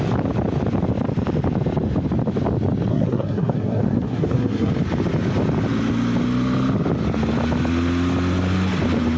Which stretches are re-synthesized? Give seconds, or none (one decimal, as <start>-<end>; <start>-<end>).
2.9-4.7